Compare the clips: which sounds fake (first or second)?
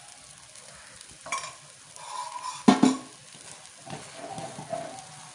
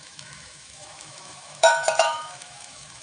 second